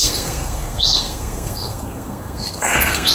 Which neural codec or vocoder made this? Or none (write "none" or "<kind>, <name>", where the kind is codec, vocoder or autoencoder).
codec, SNAC